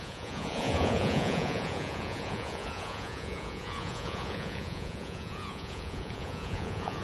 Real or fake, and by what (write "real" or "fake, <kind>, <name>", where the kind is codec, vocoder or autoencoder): fake, vocoder, Vocos